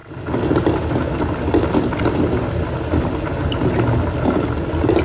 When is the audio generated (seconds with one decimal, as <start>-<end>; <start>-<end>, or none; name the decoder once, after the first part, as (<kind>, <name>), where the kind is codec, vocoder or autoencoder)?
none

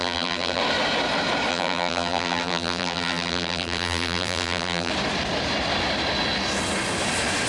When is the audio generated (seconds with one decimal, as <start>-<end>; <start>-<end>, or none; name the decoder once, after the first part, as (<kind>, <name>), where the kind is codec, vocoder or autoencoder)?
0.0-0.6 (vocoder, BigVGAN v2); 1.5-4.9

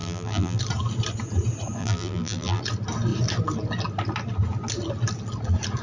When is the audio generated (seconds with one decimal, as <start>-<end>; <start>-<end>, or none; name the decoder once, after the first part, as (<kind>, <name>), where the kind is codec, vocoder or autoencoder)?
0.0-0.6 (vocoder, BigVGAN v2); 1.8-2.6

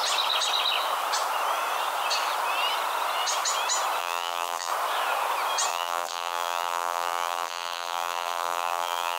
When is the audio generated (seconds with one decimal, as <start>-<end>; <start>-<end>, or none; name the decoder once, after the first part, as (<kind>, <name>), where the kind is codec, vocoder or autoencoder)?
4.0-4.7 (vocoder, BigVGAN v2); 5.7-9.2